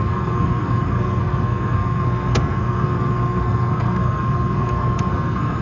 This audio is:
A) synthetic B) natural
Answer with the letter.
A